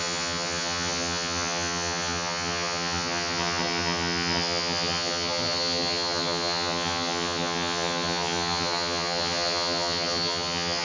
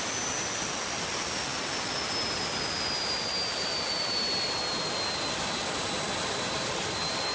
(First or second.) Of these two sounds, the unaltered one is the second